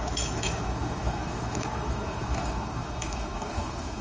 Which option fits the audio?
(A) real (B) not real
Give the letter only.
B